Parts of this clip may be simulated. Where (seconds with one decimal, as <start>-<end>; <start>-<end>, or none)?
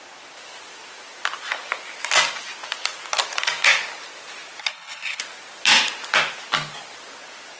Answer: 4.6-5.2